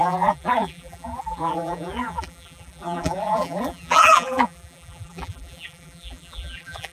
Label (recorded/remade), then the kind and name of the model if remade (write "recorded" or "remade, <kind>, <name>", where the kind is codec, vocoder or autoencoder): remade, vocoder, BigVGAN v2